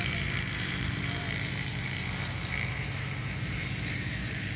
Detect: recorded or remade remade